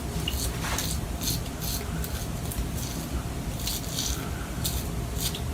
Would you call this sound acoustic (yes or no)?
yes